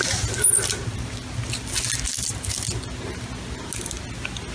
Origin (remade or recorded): recorded